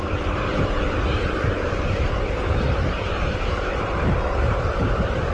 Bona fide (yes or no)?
no